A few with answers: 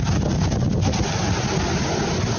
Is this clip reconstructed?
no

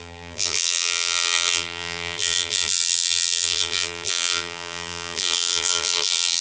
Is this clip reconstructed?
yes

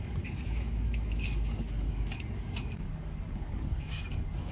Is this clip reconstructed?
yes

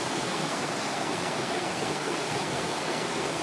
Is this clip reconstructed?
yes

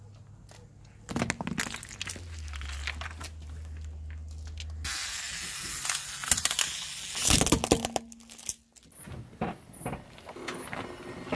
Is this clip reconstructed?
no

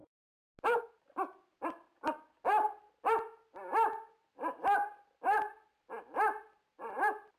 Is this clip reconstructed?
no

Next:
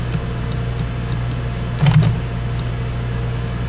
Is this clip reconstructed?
no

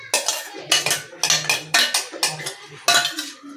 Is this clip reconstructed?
no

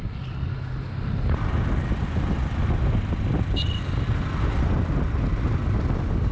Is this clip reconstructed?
no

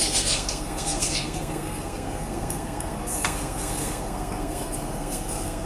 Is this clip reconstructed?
yes